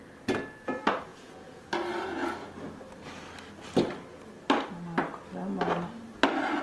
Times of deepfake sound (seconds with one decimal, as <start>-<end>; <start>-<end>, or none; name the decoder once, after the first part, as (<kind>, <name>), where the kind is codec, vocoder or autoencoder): 1.1-1.6 (vocoder, Vocos)